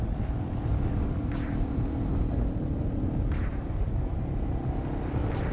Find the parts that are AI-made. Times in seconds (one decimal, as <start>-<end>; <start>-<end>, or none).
none